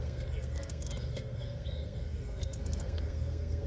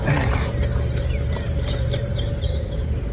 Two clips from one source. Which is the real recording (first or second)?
second